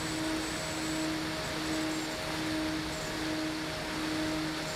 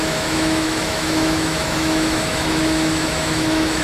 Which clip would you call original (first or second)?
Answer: first